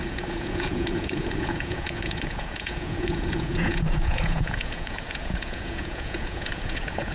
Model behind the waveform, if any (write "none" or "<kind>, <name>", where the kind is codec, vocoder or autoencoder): vocoder, Vocos